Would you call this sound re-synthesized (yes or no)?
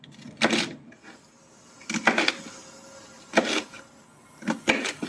no